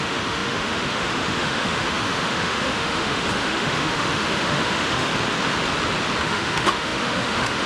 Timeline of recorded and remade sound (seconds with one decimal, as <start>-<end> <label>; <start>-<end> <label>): 0.0-5.1 remade; 5.1-6.2 recorded; 6.2-7.7 remade